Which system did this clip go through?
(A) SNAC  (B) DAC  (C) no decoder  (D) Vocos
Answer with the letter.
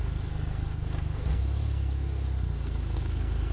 A